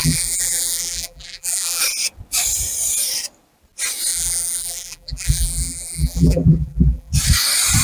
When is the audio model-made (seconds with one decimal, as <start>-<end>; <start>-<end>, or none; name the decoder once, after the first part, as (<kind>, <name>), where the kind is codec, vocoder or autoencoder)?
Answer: 0.0-1.8 (vocoder, BigVGAN v2); 4.1-7.1